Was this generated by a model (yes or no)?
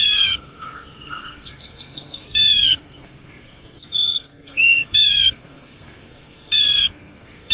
yes